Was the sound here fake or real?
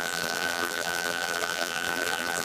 fake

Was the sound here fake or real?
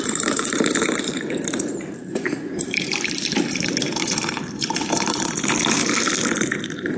fake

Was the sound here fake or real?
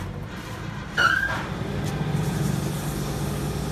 real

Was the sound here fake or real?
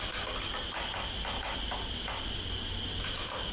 real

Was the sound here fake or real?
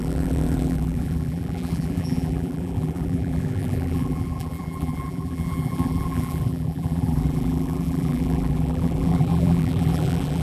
fake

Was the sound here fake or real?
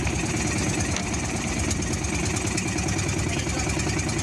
real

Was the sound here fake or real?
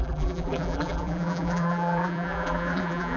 fake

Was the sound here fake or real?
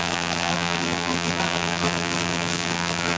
fake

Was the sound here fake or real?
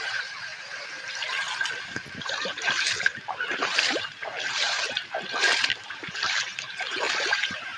fake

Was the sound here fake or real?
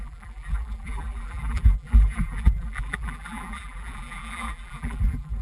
fake